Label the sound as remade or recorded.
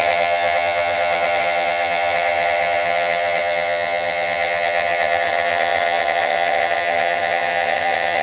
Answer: remade